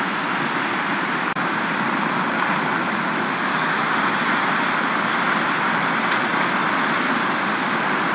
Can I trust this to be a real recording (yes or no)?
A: no